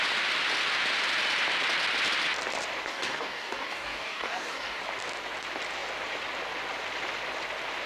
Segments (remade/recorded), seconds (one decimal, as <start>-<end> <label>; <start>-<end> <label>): 0.0-2.9 recorded; 2.9-4.8 remade; 4.8-7.9 recorded